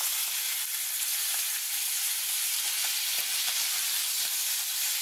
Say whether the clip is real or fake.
real